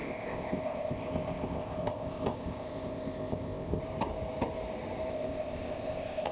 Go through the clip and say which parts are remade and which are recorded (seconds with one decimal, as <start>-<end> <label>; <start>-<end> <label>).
0.0-3.8 remade; 3.8-5.1 recorded; 5.1-6.3 remade